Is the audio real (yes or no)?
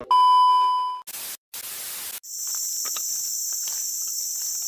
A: yes